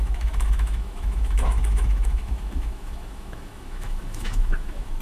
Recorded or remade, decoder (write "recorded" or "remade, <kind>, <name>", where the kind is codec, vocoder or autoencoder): remade, autoencoder, DAC-VAE